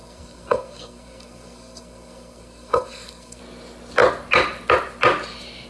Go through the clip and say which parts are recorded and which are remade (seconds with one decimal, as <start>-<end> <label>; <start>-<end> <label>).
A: 0.0-3.4 remade; 3.4-5.7 recorded